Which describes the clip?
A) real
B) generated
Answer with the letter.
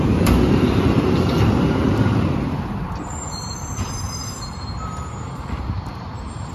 B